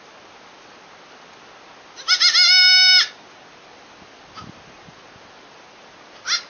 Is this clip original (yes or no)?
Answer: yes